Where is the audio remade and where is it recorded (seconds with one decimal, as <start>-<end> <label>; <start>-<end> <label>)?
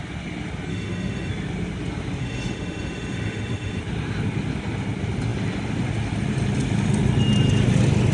0.0-0.7 recorded; 0.7-1.3 remade; 1.3-2.2 recorded; 2.2-3.8 remade; 3.8-8.1 recorded